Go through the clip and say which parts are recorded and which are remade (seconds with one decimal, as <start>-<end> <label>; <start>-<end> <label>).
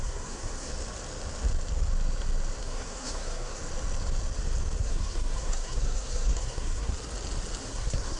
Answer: 0.0-0.7 remade; 0.7-2.6 recorded; 2.6-3.6 remade; 3.6-4.8 recorded; 4.8-6.9 remade; 6.9-7.6 recorded; 7.6-8.2 remade